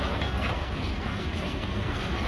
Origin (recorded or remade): remade